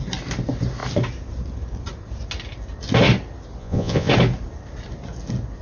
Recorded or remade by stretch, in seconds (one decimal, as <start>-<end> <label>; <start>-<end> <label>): 0.0-3.6 recorded; 3.6-4.1 remade; 4.1-5.6 recorded